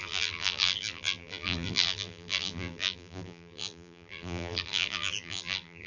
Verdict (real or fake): fake